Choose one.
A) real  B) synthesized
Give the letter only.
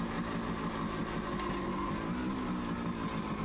A